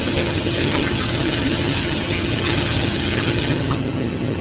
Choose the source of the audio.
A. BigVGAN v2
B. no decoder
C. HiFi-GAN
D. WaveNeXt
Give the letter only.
C